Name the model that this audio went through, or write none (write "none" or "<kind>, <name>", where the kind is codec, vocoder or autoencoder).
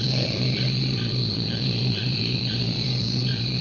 vocoder, Vocos